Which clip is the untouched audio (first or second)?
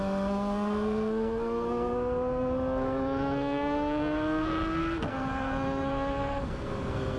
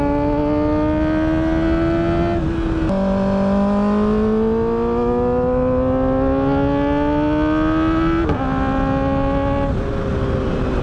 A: second